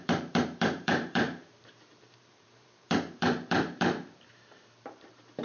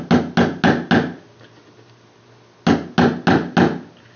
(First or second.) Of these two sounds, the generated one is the first